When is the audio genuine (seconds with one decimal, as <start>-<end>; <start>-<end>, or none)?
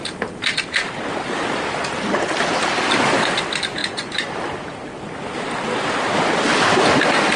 0.0-3.8; 4.3-7.4